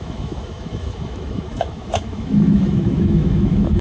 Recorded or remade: remade